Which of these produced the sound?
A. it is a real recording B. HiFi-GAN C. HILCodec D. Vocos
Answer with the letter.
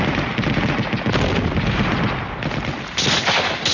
A